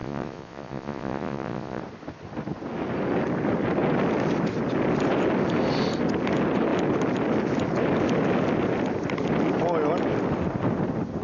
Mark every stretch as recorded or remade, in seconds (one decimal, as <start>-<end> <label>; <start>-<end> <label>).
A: 0.0-1.8 remade; 1.8-11.2 recorded